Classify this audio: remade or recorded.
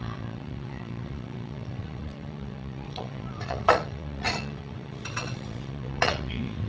remade